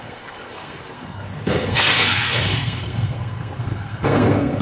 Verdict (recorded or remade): remade